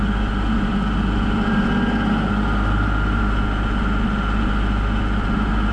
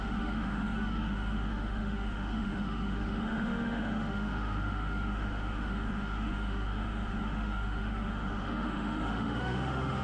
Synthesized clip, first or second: second